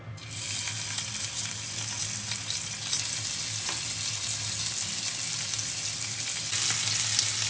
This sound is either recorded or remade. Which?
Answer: recorded